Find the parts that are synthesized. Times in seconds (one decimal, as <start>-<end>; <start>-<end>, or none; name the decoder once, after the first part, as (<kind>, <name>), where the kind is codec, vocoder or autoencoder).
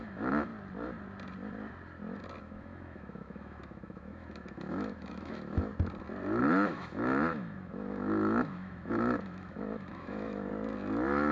0.0-0.5 (autoencoder, DAC-VAE); 2.4-5.7; 6.4-10.5